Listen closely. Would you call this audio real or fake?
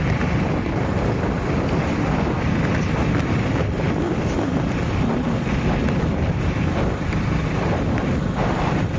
real